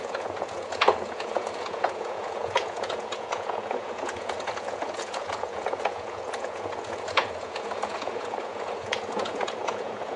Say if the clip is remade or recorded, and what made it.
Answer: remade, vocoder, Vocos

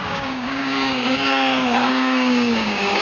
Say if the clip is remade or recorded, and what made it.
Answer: remade, codec, DAC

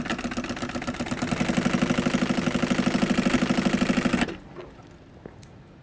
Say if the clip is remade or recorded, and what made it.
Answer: recorded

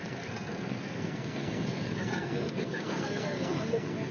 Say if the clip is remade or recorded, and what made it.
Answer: remade, codec, SNAC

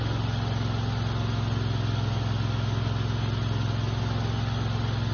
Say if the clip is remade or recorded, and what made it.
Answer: recorded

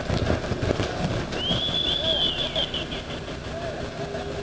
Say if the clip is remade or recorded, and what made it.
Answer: recorded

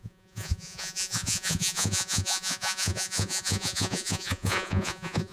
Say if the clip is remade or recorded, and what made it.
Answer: remade, vocoder, Vocos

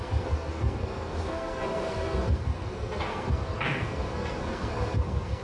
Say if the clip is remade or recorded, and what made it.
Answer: remade, codec, SNAC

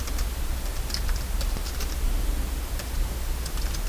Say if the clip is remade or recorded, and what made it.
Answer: recorded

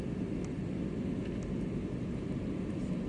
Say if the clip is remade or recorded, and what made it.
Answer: recorded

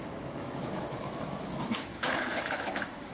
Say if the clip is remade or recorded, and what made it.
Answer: remade, autoencoder, DAC-VAE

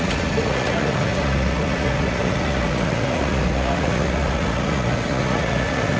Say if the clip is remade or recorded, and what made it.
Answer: remade, vocoder, Vocos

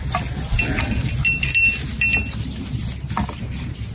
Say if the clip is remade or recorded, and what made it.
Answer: recorded